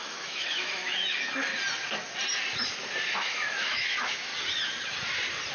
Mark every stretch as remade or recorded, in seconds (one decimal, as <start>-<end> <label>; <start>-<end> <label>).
0.0-1.5 remade; 1.5-3.2 recorded; 3.2-4.3 remade; 4.3-5.5 recorded